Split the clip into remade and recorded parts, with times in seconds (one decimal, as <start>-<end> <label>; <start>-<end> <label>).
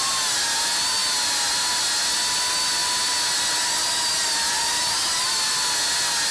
0.0-6.3 recorded